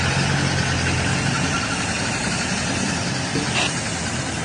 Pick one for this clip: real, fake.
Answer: real